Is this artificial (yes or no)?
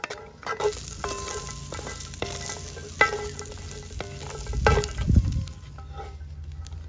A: no